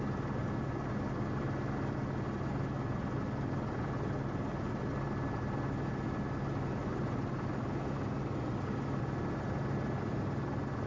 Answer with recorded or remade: recorded